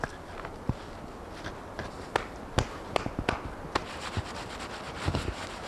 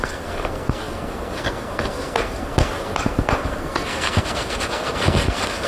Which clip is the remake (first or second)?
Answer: second